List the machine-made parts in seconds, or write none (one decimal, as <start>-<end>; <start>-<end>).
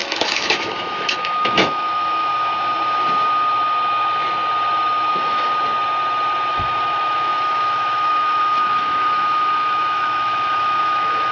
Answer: 0.0-2.3; 5.1-5.5; 6.5-11.3